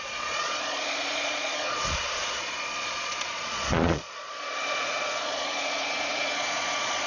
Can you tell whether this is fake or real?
fake